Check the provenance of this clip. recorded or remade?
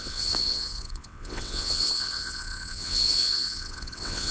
remade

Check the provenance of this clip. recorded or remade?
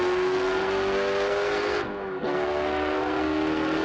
remade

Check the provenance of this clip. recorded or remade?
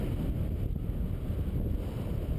recorded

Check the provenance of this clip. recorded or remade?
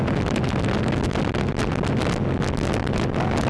recorded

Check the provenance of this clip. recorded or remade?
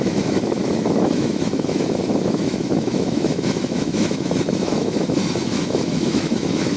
remade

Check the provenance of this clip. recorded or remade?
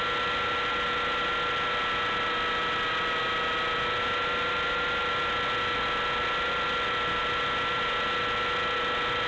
recorded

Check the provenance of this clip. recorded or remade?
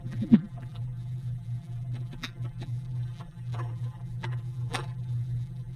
remade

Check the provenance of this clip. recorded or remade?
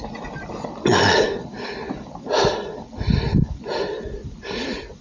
recorded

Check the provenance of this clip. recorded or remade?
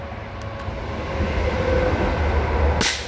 recorded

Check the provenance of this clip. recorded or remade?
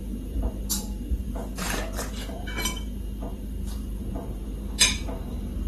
remade